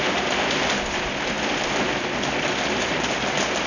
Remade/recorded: recorded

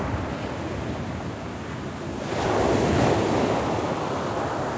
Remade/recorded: recorded